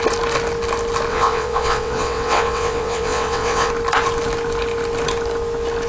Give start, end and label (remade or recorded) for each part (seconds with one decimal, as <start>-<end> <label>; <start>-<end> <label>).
0.0-1.1 recorded; 1.1-3.7 remade; 3.7-5.9 recorded